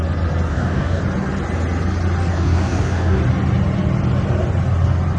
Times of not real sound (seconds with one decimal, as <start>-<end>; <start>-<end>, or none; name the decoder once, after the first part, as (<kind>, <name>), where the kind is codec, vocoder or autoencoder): 0.5-1.0 (codec, DAC); 2.3-3.2